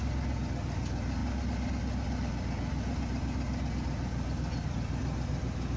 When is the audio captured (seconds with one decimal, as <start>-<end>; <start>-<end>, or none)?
0.0-5.8